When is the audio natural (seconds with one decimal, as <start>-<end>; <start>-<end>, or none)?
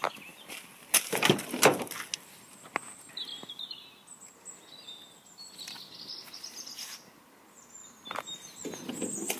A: 0.0-9.4